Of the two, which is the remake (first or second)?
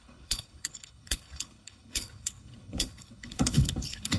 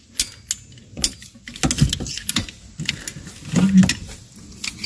first